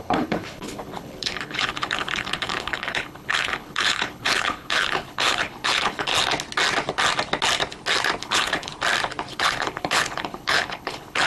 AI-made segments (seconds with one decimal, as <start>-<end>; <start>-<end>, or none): 0.0-6.1; 8.2-8.7; 9.3-11.3